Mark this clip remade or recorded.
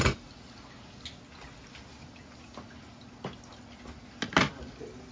recorded